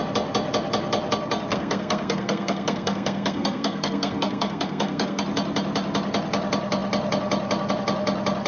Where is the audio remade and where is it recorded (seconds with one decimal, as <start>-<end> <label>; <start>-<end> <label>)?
0.0-1.5 recorded; 1.5-5.2 remade; 5.2-8.5 recorded